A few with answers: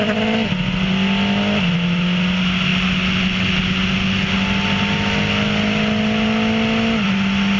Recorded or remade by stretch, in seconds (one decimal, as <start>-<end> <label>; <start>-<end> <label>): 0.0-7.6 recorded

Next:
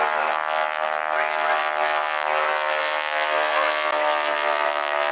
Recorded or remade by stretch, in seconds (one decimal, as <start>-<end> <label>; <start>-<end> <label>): 0.0-5.1 recorded

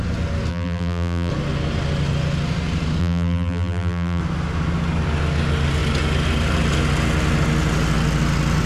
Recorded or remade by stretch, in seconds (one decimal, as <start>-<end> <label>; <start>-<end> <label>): 0.0-0.5 recorded; 0.5-1.3 remade; 1.3-3.0 recorded; 3.0-4.2 remade; 4.2-8.7 recorded